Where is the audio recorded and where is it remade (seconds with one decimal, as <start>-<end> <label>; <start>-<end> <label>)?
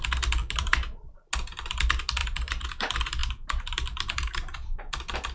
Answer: 0.0-0.4 recorded; 0.4-1.3 remade; 1.3-2.2 recorded; 2.2-2.7 remade; 2.7-3.2 recorded; 3.2-5.3 remade